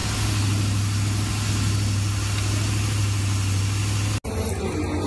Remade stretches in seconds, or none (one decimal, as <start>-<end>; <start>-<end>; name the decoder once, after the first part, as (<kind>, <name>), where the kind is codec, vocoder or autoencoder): none